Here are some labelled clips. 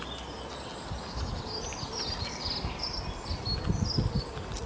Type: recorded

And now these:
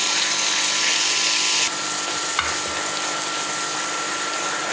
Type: recorded